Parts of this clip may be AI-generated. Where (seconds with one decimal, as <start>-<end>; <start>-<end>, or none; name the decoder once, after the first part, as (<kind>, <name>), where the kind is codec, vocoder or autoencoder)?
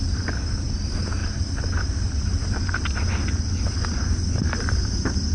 none